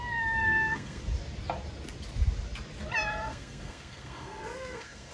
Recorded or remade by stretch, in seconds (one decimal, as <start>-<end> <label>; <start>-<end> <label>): 0.0-0.4 recorded; 0.4-1.0 remade; 1.0-3.3 recorded; 3.3-5.1 remade